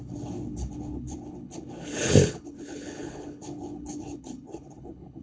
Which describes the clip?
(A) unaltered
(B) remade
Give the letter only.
B